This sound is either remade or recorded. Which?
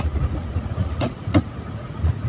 remade